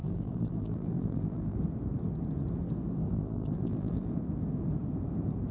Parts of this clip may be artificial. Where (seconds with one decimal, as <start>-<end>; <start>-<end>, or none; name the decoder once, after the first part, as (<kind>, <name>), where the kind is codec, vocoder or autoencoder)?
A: 0.0-1.6 (vocoder, BigVGAN v2); 3.1-4.1